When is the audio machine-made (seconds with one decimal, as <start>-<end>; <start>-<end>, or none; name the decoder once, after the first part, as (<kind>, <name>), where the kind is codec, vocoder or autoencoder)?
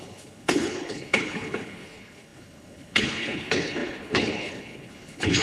0.0-5.4 (codec, HILCodec)